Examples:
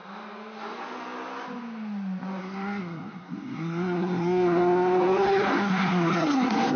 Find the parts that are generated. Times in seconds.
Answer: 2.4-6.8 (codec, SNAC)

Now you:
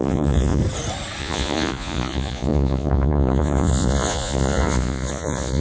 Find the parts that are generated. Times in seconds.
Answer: 0.0-0.6 (vocoder, Vocos); 1.2-5.6